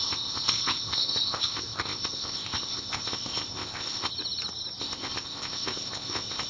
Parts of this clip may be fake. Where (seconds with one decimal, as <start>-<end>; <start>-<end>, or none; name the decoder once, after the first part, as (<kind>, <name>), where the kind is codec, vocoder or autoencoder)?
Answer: 0.0-4.1 (codec, ZipCodec); 4.8-6.5